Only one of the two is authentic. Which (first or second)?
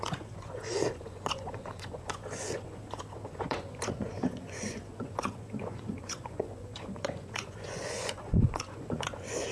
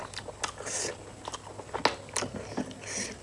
second